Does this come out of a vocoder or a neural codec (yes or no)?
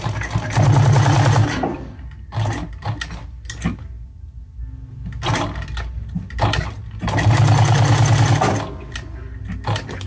no